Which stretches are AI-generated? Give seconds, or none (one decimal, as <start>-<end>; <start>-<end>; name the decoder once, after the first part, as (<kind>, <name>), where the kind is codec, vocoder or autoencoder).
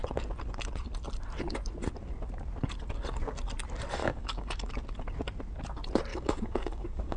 4.0-4.7 (codec, DAC); 6.1-7.2